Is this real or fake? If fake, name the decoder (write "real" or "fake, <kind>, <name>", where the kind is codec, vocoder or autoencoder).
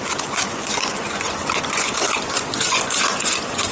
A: fake, vocoder, Vocos